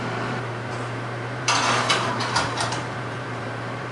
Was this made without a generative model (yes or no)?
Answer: no